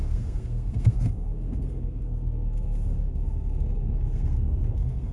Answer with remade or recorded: remade